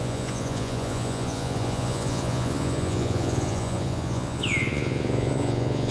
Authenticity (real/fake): fake